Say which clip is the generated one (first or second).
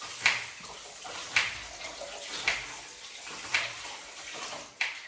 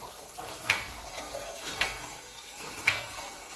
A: second